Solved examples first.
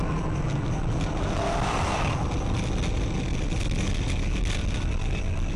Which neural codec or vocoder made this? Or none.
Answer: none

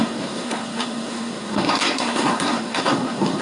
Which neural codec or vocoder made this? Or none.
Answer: codec, SNAC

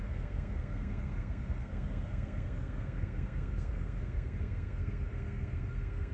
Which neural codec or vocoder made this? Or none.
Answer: codec, SNAC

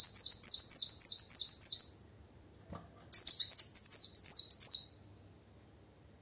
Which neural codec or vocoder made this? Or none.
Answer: none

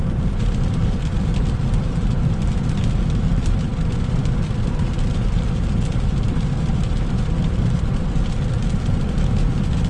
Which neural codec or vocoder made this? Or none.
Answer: none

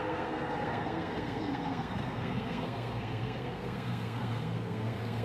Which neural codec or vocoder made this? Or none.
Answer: codec, SNAC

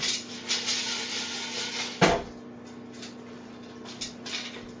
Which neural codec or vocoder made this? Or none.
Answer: none